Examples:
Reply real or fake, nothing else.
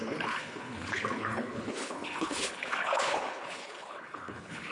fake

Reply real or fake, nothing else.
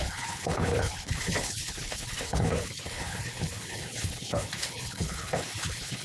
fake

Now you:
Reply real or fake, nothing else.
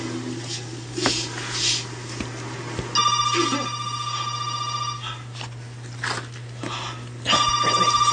real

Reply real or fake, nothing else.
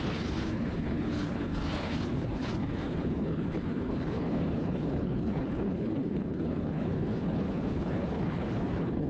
fake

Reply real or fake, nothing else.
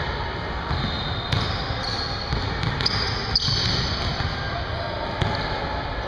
real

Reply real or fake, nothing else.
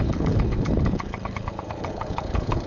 fake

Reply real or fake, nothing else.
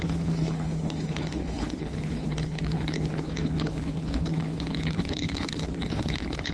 fake